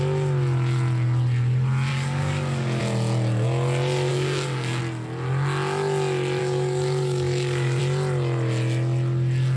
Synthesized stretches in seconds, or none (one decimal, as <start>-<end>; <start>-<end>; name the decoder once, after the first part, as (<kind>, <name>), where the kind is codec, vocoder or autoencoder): 1.9-2.8 (codec, DAC); 4.1-4.8; 6.4-7.8